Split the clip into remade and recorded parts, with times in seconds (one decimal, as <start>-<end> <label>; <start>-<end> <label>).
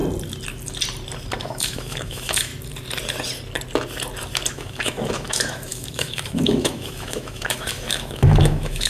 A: 0.0-1.4 recorded; 1.4-2.5 remade; 2.5-4.5 recorded; 4.5-8.9 remade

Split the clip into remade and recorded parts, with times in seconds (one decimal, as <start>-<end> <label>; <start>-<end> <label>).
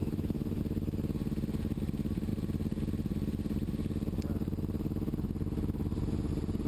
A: 0.0-0.6 remade; 0.6-6.7 recorded